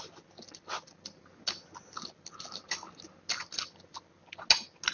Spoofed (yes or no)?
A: no